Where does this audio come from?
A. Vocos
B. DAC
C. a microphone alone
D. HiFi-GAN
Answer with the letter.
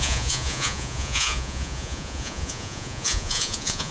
A